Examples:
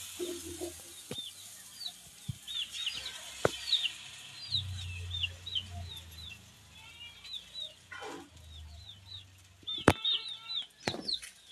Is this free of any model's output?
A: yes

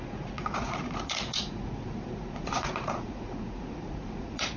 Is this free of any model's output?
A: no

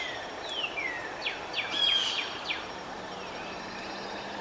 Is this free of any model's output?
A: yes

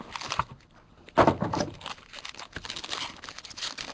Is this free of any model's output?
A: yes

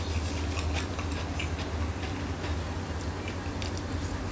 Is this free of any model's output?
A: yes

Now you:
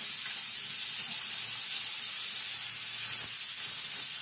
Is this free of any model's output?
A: yes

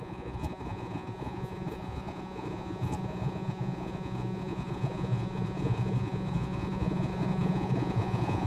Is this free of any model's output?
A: no